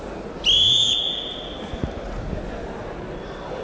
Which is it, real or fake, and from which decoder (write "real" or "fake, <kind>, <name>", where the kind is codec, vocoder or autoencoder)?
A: real